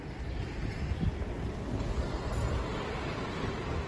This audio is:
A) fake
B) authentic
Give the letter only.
B